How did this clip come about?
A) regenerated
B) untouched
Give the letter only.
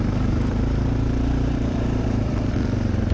A